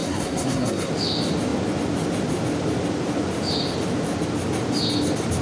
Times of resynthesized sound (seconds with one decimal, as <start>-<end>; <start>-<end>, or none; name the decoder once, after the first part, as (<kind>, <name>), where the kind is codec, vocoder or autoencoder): 0.0-0.9 (codec, SNAC)